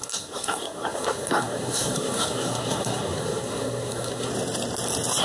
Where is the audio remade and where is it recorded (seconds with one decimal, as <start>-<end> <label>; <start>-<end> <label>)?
0.0-4.3 remade; 4.3-5.2 recorded